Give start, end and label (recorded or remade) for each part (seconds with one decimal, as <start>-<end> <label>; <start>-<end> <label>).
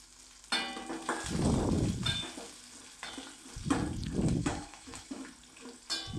0.0-4.4 recorded; 4.4-5.3 remade; 5.3-6.2 recorded